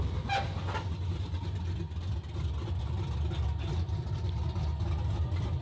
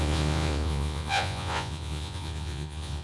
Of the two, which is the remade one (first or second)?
second